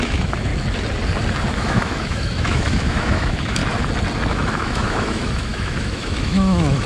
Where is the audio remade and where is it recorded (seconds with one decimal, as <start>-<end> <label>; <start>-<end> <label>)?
0.0-0.5 remade; 0.5-1.5 recorded; 1.5-3.6 remade; 3.6-4.3 recorded; 4.3-6.9 remade